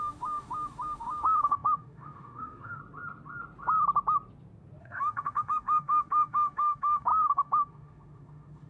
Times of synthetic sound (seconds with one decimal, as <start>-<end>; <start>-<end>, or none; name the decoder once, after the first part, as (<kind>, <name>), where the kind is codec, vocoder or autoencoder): 0.0-2.8 (autoencoder, DAC-VAE); 4.8-8.7